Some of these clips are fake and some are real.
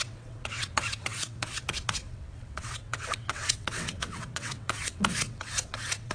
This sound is fake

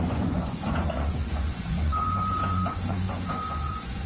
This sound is fake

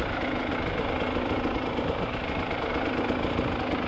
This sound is real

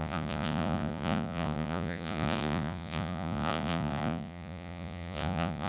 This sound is fake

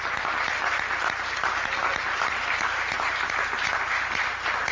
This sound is real